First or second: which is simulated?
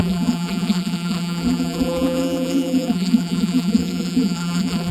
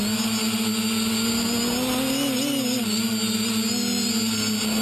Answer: first